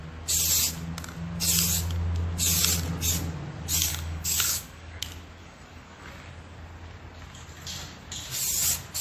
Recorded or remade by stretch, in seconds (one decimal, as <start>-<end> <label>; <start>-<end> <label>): 0.0-3.9 recorded; 3.9-5.0 remade; 5.0-5.4 recorded; 5.4-6.1 remade; 6.1-9.0 recorded